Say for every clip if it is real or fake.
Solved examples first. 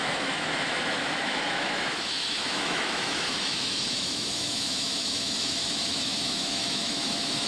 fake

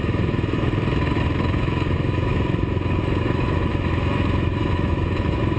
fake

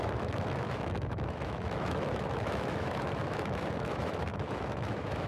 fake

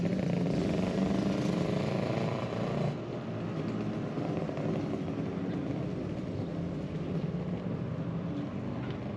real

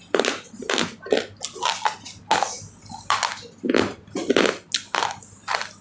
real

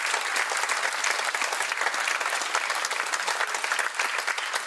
real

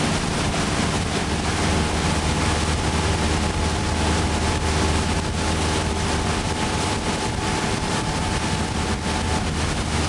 real